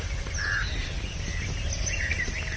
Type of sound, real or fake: real